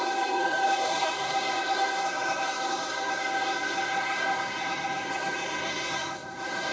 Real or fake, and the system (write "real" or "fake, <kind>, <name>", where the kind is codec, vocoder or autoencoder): fake, codec, SNAC